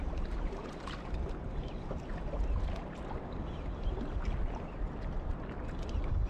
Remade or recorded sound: recorded